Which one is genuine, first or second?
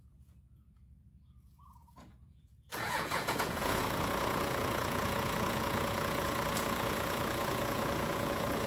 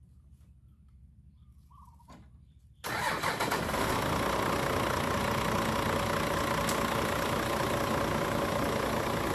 second